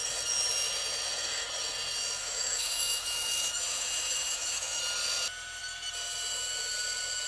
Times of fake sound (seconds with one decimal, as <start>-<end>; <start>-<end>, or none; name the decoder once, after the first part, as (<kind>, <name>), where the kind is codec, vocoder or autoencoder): 2.2-4.8 (autoencoder, DAC-VAE)